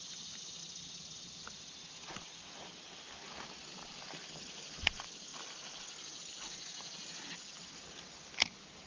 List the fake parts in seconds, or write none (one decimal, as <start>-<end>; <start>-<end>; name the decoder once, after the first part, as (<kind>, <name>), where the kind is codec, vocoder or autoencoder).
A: none

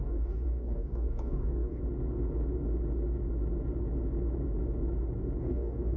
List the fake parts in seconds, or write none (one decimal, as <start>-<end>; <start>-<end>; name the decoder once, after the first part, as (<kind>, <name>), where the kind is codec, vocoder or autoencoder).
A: 0.0-1.8 (codec, DAC); 5.4-6.0

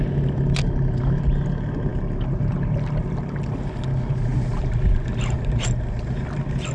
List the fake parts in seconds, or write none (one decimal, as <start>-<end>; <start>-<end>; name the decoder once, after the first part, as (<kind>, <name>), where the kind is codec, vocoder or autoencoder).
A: none

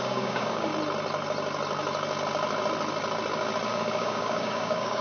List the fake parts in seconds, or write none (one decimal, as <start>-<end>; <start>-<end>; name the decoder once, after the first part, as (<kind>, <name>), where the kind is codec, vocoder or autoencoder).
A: 0.0-0.7 (codec, DAC); 3.7-5.0

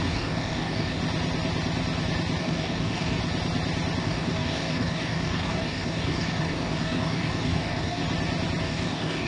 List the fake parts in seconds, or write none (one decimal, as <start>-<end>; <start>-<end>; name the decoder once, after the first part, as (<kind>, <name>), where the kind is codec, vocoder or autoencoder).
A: 0.0-1.0 (codec, DAC); 2.4-3.2; 4.0-8.0; 8.6-9.3

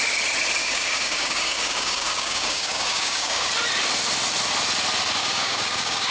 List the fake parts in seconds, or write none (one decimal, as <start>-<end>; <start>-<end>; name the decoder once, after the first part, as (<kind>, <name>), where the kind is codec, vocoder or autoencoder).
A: 0.6-3.5 (codec, DAC); 5.2-6.1

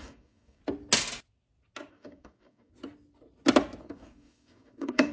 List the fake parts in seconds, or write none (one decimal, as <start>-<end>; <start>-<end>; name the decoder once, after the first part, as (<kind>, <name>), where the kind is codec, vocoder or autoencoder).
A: 0.0-0.6 (codec, DAC); 1.9-2.7; 3.8-5.1

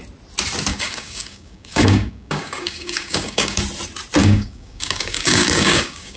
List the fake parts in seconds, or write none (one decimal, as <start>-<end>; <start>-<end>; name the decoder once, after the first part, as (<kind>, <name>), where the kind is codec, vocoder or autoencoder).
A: 0.7-3.6 (codec, DAC); 4.2-6.2